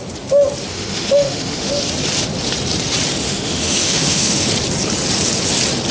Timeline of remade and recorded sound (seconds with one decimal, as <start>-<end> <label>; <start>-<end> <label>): 0.0-0.7 recorded; 0.7-1.7 remade; 1.7-3.2 recorded; 3.2-4.5 remade; 4.5-5.9 recorded

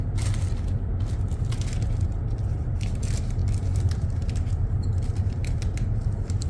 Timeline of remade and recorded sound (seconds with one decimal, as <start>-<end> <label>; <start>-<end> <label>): 0.0-6.5 recorded

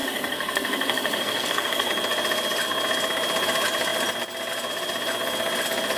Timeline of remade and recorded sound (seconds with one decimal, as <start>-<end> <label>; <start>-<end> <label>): 0.0-1.9 remade; 1.9-6.0 recorded

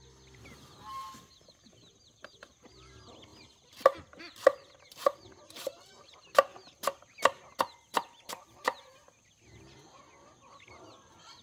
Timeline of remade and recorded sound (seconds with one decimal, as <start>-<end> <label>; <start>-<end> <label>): 0.0-11.4 recorded

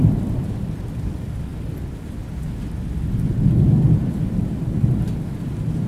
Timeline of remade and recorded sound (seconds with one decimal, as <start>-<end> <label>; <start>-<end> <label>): 0.0-5.9 recorded

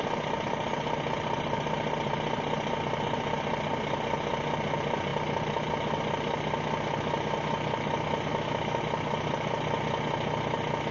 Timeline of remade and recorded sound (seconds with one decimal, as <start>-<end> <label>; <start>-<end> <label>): 0.0-8.3 recorded; 8.3-8.8 remade; 8.8-10.9 recorded

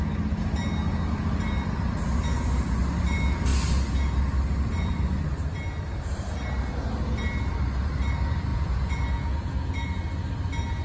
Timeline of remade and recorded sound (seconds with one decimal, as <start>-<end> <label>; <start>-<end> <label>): 0.0-8.5 recorded; 8.5-10.0 remade; 10.0-10.8 recorded